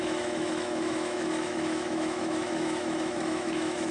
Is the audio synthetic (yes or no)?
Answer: yes